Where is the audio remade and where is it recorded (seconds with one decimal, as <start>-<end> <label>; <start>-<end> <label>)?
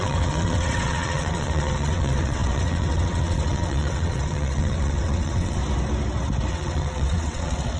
0.0-5.6 remade; 5.6-6.5 recorded; 6.5-7.8 remade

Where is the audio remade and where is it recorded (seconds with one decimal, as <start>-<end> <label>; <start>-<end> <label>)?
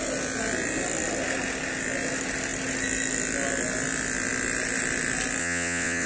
0.0-5.4 recorded; 5.4-6.1 remade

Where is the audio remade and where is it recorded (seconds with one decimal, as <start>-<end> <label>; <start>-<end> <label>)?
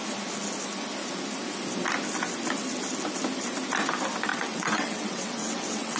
0.0-4.3 recorded; 4.3-6.0 remade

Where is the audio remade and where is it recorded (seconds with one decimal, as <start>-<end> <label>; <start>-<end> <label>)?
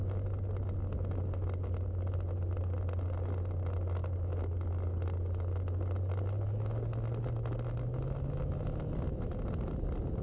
0.0-10.2 recorded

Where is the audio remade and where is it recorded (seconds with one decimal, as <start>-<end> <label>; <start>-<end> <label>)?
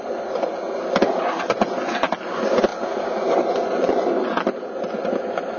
0.0-5.6 recorded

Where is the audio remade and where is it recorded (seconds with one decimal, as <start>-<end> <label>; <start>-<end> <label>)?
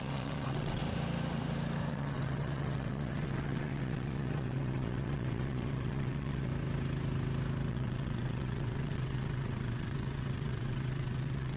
0.0-0.8 remade; 0.8-1.9 recorded; 1.9-6.5 remade; 6.5-7.7 recorded; 7.7-11.6 remade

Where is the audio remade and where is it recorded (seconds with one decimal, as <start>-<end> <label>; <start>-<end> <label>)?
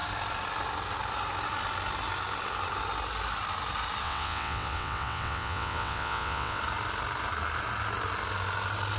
0.0-4.0 recorded; 4.0-6.6 remade; 6.6-9.0 recorded